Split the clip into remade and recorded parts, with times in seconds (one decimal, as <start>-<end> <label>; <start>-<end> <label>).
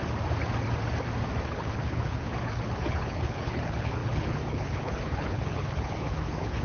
0.0-1.5 recorded; 1.5-6.6 remade